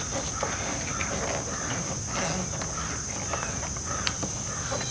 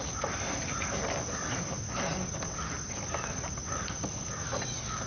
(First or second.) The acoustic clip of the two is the first